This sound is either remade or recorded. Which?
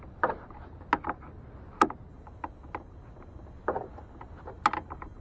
recorded